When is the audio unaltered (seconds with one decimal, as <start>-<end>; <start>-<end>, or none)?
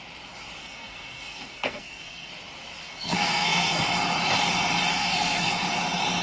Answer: 0.0-0.6; 2.3-2.8; 3.8-4.9; 5.5-6.2